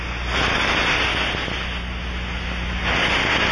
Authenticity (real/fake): real